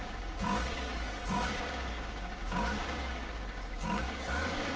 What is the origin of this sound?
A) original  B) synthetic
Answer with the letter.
B